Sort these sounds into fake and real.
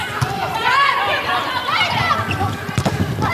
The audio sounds real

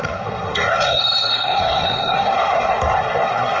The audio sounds fake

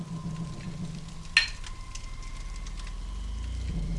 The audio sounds real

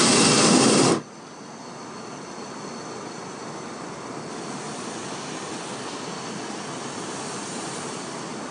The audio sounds real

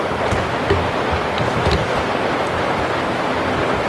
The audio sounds real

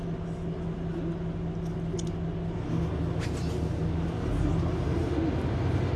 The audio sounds real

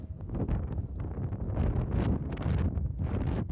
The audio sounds real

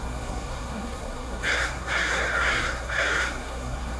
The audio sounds fake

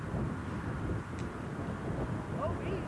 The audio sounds real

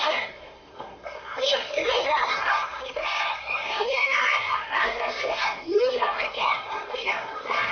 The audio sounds fake